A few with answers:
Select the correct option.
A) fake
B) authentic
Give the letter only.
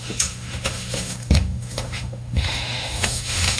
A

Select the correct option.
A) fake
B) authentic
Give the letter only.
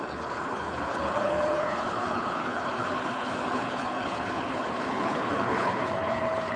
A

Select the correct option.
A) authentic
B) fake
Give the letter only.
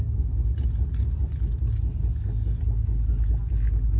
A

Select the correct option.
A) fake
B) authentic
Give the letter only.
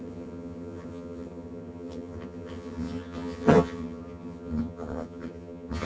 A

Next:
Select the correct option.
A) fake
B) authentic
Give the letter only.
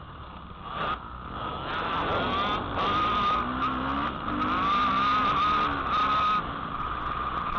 B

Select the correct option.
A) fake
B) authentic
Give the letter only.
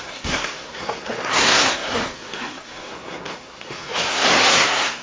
A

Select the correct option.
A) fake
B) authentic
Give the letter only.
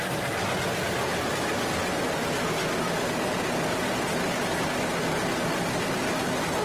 B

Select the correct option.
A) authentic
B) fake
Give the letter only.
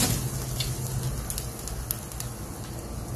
A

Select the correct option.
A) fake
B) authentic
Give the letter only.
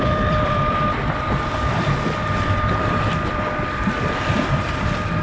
A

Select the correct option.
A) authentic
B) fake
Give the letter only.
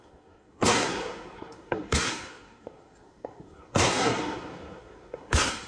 B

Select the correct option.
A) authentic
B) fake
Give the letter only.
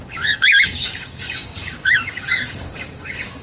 B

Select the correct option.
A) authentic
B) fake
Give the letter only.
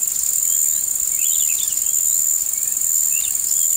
A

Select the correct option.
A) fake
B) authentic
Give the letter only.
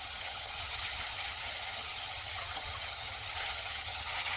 A